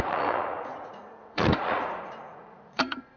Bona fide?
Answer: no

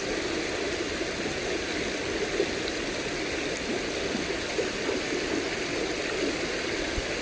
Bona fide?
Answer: yes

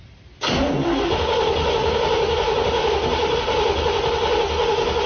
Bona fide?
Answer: yes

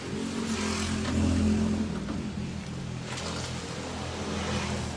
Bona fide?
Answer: yes